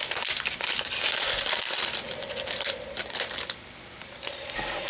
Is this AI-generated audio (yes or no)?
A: no